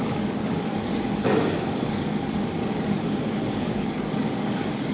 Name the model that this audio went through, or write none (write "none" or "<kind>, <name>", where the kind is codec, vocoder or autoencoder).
codec, DAC